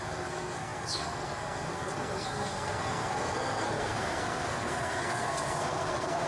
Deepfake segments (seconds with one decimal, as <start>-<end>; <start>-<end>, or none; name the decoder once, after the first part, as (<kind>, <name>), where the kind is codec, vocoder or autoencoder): 0.0-6.3 (codec, SNAC)